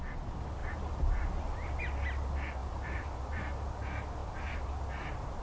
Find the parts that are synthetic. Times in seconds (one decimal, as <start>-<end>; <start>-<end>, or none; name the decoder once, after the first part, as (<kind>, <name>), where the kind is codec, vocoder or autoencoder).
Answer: 0.6-1.8 (vocoder, BigVGAN v2); 2.6-3.4; 4.2-5.4